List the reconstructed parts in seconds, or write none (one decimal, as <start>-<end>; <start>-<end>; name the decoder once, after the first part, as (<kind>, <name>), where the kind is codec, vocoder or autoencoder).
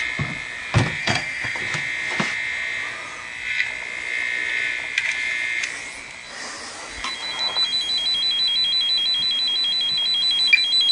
1.0-1.6 (codec, SNAC)